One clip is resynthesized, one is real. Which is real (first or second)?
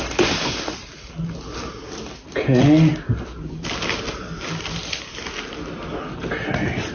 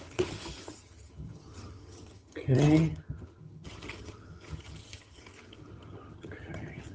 first